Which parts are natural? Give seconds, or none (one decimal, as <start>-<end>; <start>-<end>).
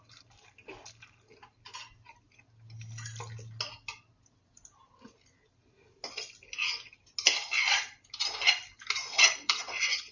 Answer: 0.0-9.0